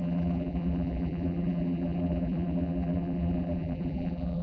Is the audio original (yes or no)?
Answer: no